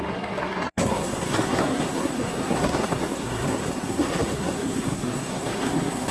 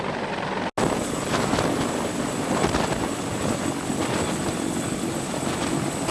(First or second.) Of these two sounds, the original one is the second